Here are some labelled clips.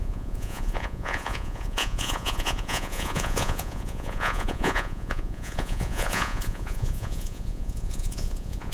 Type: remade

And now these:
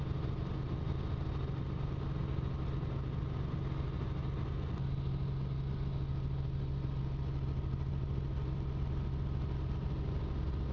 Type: recorded